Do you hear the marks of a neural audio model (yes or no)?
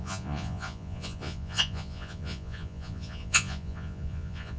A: yes